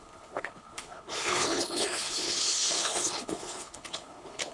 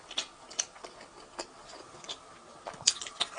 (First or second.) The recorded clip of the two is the second